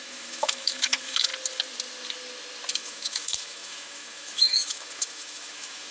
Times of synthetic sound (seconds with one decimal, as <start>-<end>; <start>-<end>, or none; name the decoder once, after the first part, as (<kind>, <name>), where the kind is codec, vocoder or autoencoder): 0.0-1.3 (autoencoder, DAC-VAE); 2.7-5.9